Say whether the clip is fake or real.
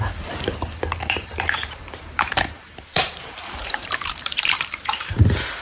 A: fake